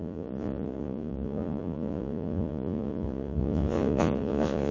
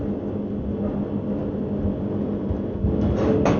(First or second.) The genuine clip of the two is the second